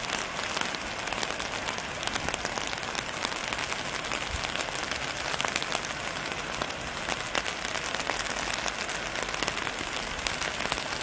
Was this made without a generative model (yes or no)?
yes